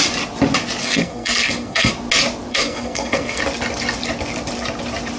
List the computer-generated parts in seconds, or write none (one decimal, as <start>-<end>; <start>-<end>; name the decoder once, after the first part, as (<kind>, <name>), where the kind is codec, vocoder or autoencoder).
0.8-1.9 (codec, SNAC); 2.5-3.4